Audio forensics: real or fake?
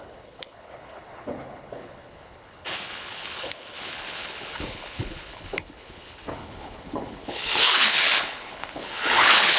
fake